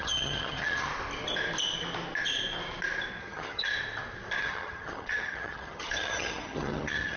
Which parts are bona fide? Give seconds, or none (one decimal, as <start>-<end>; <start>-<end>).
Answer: 0.9-3.2; 3.7-4.4

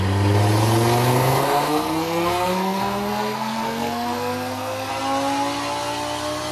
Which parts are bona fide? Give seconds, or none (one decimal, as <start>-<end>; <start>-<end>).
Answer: 0.0-1.1; 4.9-6.5

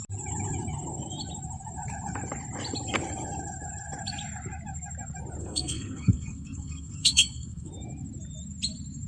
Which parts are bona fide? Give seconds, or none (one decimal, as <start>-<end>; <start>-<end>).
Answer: 0.0-5.4; 7.7-9.1